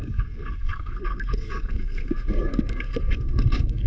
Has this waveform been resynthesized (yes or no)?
yes